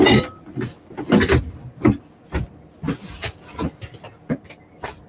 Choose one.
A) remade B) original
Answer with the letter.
B